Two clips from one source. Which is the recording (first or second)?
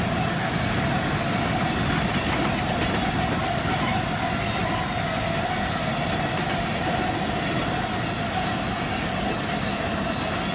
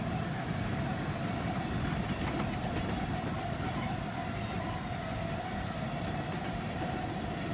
first